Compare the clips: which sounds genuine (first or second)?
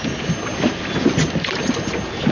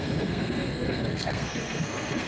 first